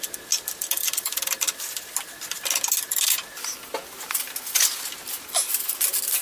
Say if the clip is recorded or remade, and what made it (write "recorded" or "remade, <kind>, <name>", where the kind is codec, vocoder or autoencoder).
recorded